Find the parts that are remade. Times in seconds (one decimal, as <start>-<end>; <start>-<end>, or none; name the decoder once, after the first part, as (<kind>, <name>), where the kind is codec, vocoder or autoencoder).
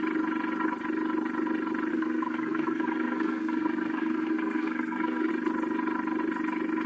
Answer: 1.9-5.3 (codec, SNAC)